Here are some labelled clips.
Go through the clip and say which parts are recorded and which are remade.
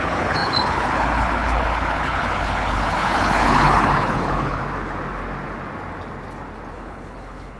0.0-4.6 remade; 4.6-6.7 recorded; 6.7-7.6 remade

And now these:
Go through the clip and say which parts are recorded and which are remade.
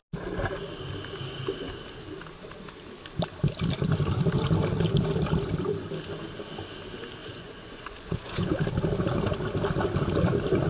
0.0-7.2 recorded; 7.2-8.5 remade; 8.5-10.7 recorded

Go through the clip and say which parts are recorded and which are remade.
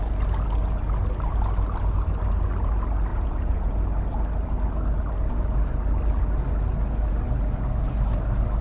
0.0-3.1 recorded; 3.1-3.7 remade; 3.7-8.6 recorded